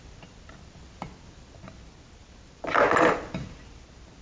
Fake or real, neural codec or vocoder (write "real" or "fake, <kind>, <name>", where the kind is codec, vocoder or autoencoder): real